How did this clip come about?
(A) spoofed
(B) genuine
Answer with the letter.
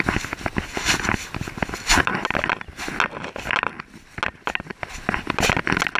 B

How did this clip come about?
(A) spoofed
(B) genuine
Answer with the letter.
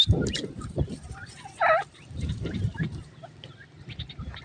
A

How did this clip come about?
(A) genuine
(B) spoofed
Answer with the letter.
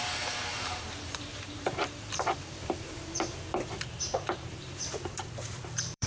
B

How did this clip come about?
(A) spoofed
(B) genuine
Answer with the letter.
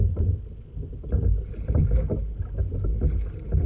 B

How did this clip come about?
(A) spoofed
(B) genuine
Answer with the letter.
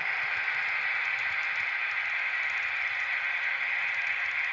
B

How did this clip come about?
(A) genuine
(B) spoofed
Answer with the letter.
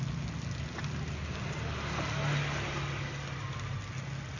A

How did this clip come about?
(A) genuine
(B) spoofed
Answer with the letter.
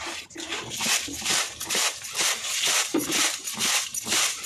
B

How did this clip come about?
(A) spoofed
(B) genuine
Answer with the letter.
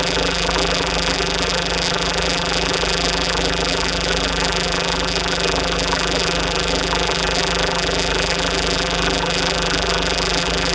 A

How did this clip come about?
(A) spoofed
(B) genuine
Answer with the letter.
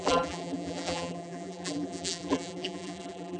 A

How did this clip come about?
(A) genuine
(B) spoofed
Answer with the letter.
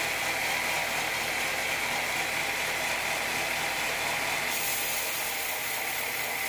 A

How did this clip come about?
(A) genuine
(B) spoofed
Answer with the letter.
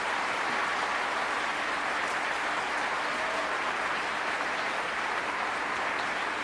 A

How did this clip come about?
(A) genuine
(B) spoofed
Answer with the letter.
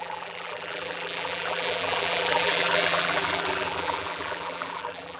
B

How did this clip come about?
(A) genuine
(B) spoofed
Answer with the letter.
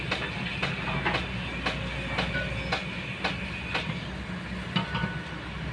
A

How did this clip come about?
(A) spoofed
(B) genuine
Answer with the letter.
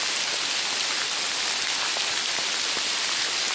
B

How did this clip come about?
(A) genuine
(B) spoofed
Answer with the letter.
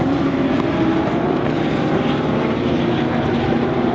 B